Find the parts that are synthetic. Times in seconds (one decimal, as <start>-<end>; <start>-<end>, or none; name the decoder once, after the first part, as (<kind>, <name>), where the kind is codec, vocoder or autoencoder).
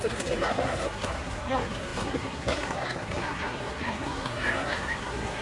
0.0-5.4 (codec, SNAC)